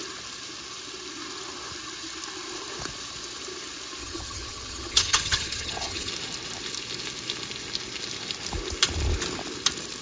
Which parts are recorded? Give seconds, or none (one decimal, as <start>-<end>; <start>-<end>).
0.0-4.0; 6.1-10.0